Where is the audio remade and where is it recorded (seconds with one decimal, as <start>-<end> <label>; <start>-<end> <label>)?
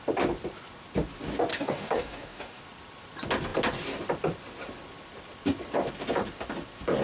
0.0-1.5 recorded; 1.5-2.6 remade; 2.6-7.0 recorded